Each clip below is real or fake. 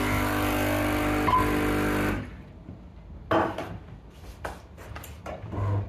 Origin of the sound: real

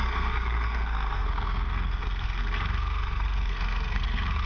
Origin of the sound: fake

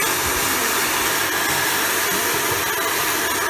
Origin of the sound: real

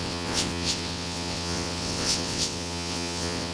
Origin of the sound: fake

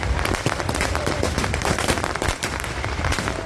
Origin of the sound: fake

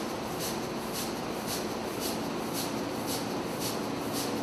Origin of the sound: real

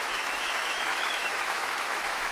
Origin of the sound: fake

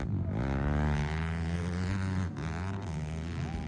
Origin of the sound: real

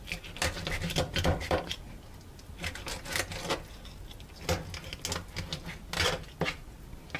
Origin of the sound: real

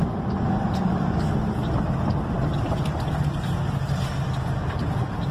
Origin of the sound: real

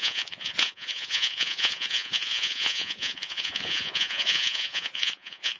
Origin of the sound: fake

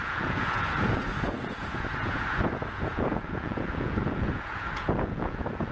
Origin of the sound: fake